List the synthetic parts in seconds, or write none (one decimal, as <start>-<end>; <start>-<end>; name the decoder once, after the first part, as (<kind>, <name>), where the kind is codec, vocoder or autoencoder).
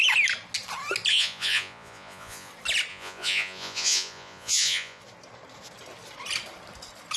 1.1-2.5 (vocoder, Vocos); 2.9-5.0